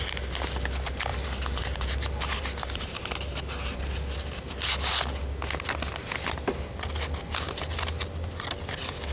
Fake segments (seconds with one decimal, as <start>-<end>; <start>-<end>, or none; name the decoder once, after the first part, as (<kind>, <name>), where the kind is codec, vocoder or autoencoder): 1.1-3.8 (vocoder, BigVGAN v2)